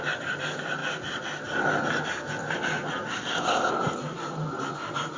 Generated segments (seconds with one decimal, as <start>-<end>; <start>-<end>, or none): 3.1-3.7

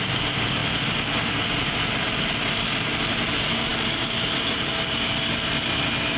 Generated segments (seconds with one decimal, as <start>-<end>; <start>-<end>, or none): none

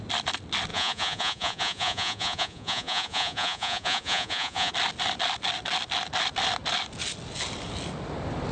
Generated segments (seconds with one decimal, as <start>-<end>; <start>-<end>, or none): 0.7-4.7

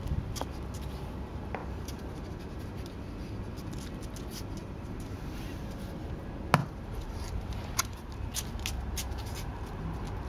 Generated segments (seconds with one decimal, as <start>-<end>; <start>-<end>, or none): 1.6-2.4; 4.6-5.6; 6.6-8.1

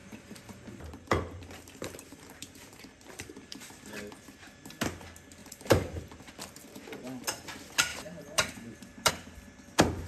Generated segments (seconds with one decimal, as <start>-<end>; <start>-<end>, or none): 0.0-3.9; 5.4-6.3; 7.9-9.1

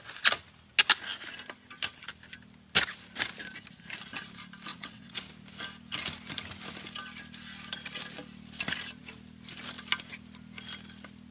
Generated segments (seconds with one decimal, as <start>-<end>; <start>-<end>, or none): 4.7-5.2

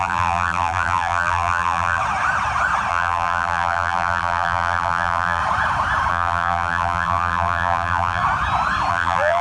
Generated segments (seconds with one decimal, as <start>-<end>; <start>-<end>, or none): 0.0-2.0; 2.9-5.4; 6.1-8.2; 8.9-9.4